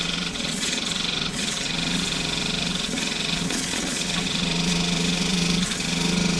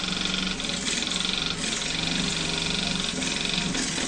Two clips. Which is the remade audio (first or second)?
first